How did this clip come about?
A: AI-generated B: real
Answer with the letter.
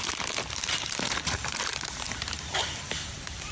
A